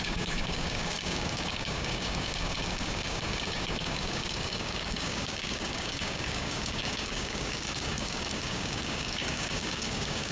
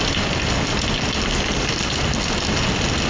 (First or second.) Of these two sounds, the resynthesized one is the first